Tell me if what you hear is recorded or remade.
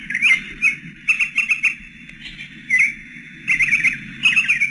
recorded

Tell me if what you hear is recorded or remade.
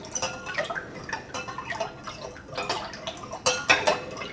recorded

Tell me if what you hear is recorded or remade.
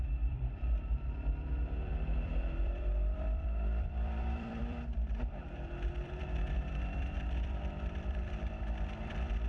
remade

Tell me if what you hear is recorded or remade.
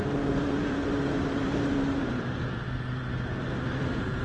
remade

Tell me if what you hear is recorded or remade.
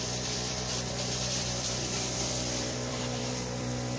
remade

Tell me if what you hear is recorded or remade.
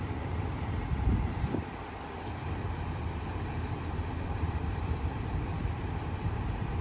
remade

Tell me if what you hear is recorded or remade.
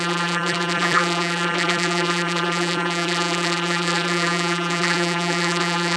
remade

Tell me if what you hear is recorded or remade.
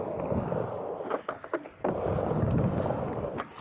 recorded